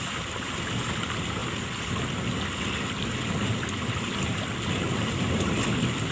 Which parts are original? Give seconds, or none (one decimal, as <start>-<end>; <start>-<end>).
0.0-6.1